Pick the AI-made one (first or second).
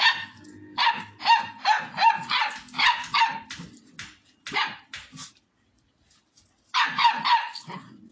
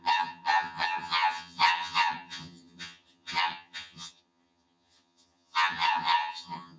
second